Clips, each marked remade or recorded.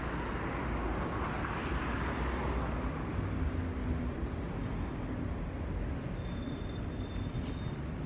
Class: recorded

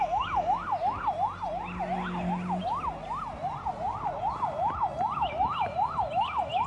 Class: recorded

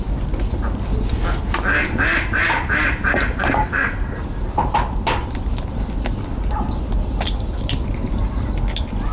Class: recorded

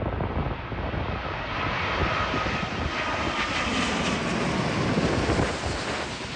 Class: recorded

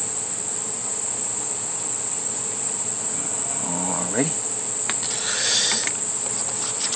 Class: recorded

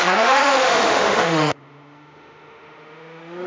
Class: remade